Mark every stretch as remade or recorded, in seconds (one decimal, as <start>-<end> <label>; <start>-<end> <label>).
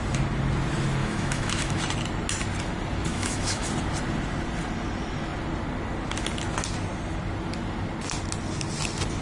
0.0-1.0 recorded; 1.0-1.8 remade; 1.8-3.1 recorded; 3.1-3.7 remade; 3.7-9.2 recorded